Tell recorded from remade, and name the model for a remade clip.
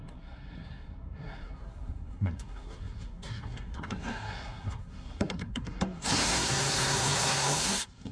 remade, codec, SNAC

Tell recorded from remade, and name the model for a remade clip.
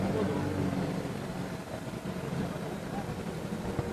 recorded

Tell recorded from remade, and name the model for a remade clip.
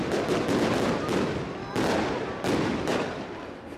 recorded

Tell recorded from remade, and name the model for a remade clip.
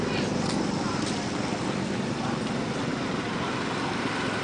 recorded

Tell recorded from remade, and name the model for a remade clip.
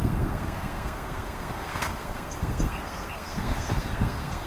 remade, codec, SNAC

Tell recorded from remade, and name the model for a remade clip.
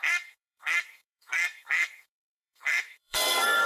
remade, codec, SNAC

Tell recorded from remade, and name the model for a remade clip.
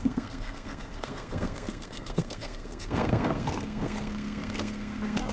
remade, codec, SNAC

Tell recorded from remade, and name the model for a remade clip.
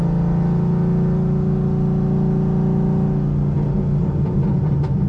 recorded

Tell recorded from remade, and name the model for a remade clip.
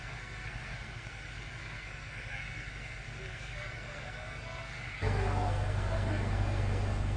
remade, codec, SNAC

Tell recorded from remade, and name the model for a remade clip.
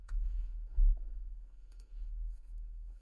remade, codec, SNAC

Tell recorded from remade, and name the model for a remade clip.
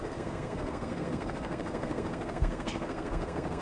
remade, codec, SNAC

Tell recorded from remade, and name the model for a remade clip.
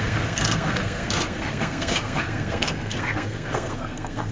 remade, codec, SNAC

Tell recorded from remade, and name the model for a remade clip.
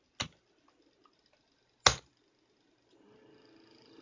recorded